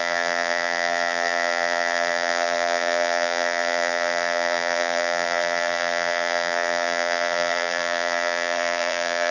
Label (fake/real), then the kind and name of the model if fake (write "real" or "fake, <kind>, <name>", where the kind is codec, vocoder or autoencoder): fake, vocoder, BigVGAN v2